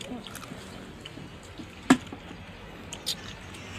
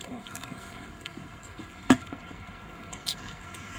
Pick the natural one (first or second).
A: first